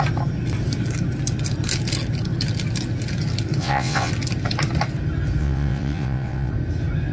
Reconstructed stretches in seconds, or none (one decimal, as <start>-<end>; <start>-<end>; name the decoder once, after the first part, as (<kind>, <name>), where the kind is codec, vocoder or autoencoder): 3.6-4.1 (vocoder, WaveNeXt); 5.4-6.5